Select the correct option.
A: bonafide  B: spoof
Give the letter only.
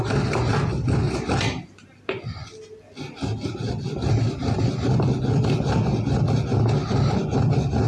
A